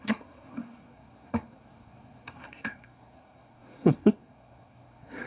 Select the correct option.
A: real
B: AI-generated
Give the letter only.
B